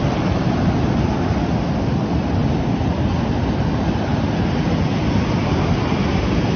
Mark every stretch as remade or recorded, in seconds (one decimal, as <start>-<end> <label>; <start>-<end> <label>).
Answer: 0.0-6.6 recorded